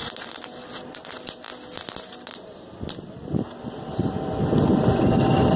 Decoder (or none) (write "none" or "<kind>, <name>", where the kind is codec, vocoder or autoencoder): vocoder, BigVGAN v2